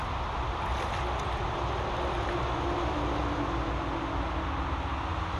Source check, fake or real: real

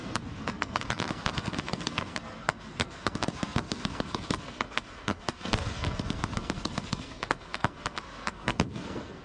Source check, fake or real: fake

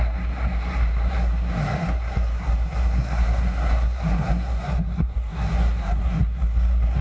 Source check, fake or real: fake